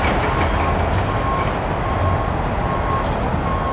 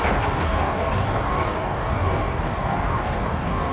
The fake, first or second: second